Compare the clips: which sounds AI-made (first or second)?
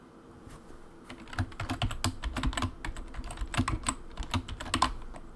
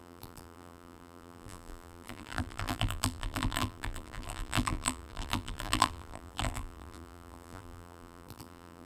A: second